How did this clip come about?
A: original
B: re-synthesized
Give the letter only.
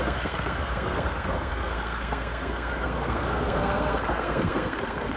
B